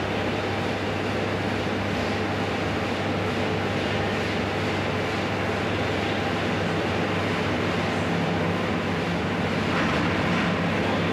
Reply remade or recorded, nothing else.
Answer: recorded